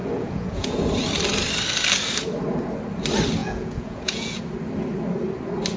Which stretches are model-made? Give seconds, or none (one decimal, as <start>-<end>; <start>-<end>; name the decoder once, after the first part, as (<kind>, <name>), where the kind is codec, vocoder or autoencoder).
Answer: 0.0-0.8 (vocoder, Vocos); 3.4-4.4

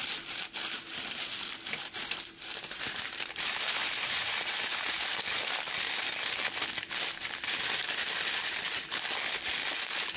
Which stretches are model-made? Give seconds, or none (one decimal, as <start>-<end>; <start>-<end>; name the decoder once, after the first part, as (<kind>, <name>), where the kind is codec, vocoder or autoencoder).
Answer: 0.0-0.9 (vocoder, BigVGAN v2); 1.8-5.1

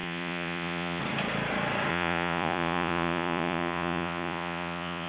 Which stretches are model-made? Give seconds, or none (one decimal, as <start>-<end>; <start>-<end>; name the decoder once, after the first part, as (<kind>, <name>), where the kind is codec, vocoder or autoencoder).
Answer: 0.0-1.0 (vocoder, Vocos); 1.9-5.1

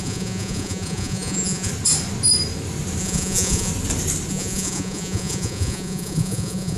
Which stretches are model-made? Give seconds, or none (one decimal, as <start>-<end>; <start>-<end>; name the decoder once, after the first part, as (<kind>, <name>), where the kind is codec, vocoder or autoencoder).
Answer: 0.0-1.7 (vocoder, Vocos); 3.0-3.7; 4.3-6.8

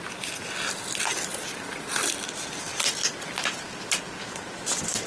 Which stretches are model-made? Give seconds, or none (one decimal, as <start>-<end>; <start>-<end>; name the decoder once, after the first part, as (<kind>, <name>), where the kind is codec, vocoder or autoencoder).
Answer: none

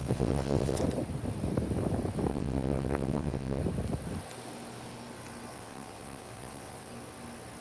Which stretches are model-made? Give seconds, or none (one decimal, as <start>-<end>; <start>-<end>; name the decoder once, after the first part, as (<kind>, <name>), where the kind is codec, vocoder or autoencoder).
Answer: 0.0-0.8 (vocoder, WaveNeXt); 2.3-3.6; 5.5-6.9

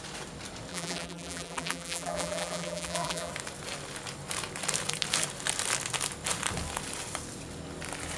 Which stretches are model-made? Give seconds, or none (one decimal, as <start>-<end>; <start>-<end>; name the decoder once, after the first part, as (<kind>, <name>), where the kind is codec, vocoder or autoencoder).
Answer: 0.7-3.3 (vocoder, BigVGAN v2)

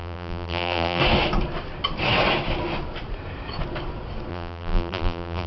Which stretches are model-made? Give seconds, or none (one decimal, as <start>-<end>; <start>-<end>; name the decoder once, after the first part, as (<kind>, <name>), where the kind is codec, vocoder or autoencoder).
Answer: 0.0-1.0 (vocoder, BigVGAN v2); 4.3-5.5